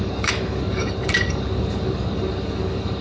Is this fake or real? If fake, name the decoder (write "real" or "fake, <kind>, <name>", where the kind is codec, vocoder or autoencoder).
fake, codec, DAC